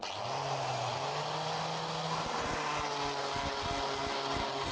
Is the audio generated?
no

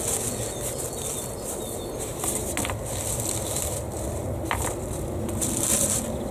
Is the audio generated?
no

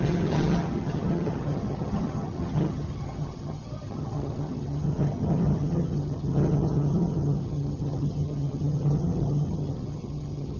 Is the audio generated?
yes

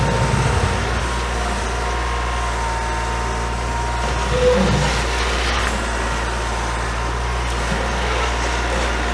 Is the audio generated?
no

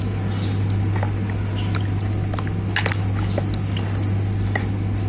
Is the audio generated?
no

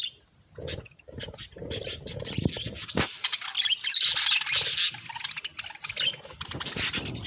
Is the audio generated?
no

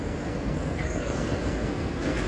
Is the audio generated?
yes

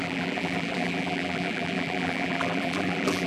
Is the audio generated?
yes